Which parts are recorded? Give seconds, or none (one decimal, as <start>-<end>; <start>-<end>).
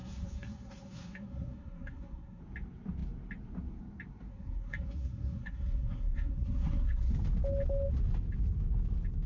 2.4-4.3; 7.1-9.3